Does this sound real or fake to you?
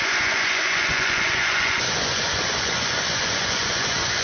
fake